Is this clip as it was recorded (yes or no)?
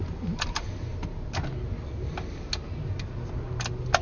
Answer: yes